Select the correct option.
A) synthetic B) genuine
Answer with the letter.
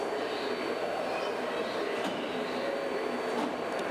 B